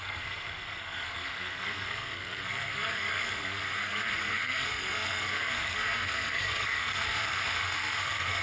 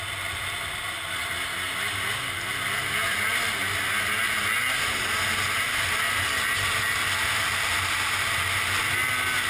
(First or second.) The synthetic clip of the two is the first